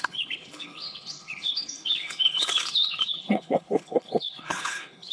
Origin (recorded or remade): remade